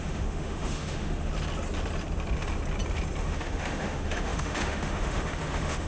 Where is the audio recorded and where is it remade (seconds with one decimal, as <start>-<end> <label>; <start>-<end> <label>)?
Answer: 0.0-1.3 remade; 1.3-3.2 recorded; 3.2-5.9 remade